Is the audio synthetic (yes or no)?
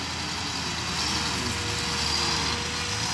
no